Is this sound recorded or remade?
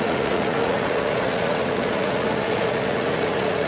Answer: remade